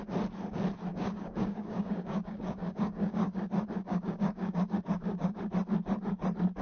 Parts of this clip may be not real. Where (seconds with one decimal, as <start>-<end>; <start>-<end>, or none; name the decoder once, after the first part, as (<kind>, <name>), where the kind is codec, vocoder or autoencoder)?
0.9-3.4 (codec, DAC); 3.8-5.4